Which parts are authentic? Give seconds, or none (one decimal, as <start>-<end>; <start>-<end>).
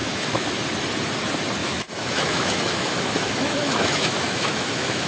0.5-1.6